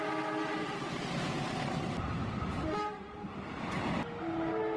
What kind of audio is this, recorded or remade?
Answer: recorded